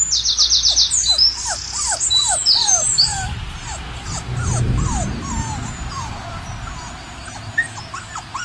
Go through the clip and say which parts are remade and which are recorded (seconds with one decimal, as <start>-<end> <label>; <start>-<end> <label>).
0.0-8.4 recorded